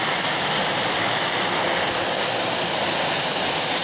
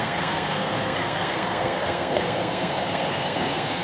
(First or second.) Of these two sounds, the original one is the first